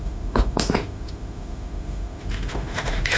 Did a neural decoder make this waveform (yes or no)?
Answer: yes